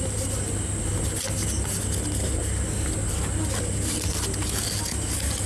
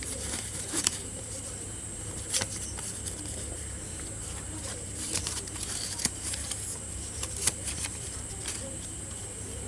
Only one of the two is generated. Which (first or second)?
second